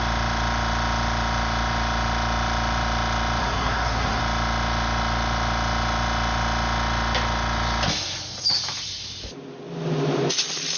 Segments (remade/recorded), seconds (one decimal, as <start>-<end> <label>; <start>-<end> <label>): 0.0-3.4 recorded; 3.4-4.2 remade; 4.2-10.8 recorded